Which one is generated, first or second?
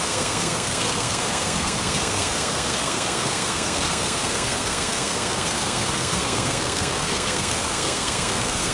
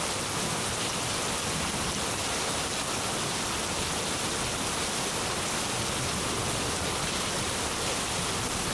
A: first